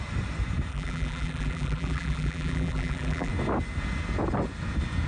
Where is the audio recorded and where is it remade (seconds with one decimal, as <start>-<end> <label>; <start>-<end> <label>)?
0.0-0.7 recorded; 0.7-3.3 remade; 3.3-5.1 recorded